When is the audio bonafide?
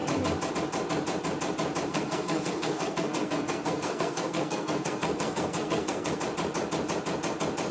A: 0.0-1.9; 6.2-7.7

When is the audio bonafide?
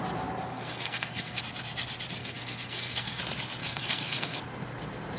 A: 0.0-0.5; 1.4-2.2; 3.2-3.6; 4.4-5.2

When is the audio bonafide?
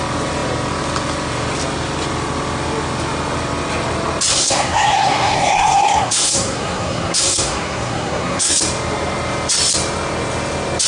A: 0.0-4.3; 8.5-10.9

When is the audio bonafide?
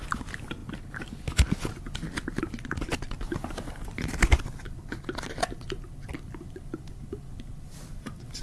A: 0.0-8.4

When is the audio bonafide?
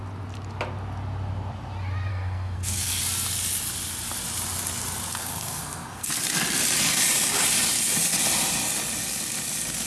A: 0.0-2.1; 3.0-5.1; 6.1-9.9